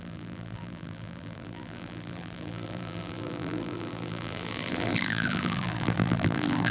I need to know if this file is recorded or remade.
remade